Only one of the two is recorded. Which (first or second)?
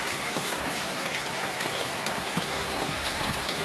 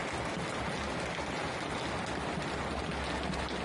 second